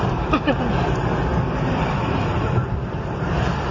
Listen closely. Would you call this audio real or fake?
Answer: real